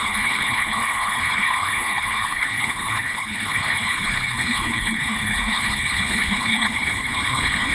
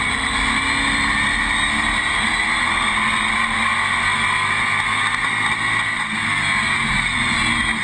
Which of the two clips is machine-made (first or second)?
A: first